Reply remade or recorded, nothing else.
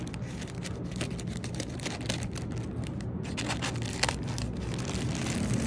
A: recorded